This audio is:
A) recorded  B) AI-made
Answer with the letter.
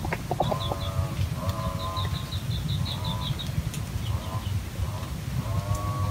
A